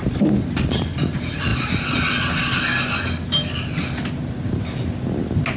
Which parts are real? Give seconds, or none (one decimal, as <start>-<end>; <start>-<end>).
0.0-5.6